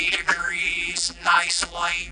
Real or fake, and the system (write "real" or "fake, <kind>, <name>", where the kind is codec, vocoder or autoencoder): fake, vocoder, BigVGAN v2